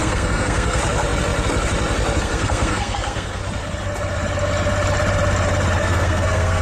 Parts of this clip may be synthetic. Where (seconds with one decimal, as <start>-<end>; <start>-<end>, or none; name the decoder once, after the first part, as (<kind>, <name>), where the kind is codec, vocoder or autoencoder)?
0.0-0.8 (codec, SNAC); 2.2-3.4; 5.8-6.6